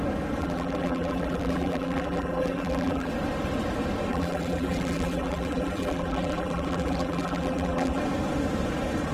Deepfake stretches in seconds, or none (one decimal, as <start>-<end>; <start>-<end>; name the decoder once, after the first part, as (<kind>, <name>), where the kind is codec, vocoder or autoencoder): 0.4-3.1 (vocoder, BigVGAN v2); 4.1-8.0